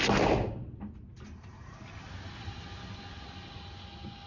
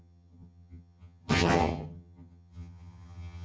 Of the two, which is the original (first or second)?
first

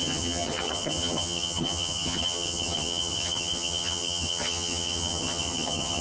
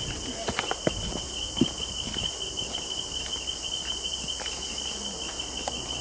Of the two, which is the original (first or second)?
second